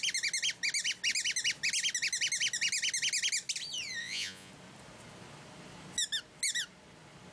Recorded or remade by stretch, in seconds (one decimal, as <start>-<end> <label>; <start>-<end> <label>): 0.0-4.0 recorded; 4.0-4.5 remade; 4.5-7.3 recorded